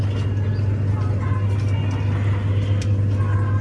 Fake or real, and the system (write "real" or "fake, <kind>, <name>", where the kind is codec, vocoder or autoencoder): real